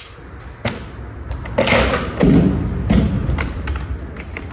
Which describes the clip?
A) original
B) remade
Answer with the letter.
A